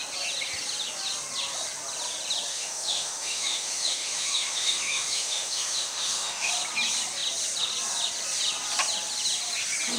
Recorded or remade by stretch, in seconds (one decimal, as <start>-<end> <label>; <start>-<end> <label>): 0.0-2.5 recorded; 2.5-6.5 remade; 6.5-10.0 recorded

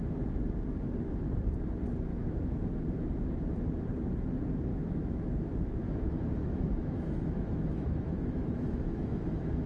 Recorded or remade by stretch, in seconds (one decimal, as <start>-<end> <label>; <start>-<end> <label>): 0.0-2.1 recorded; 2.1-2.8 remade; 2.8-4.7 recorded; 4.7-9.7 remade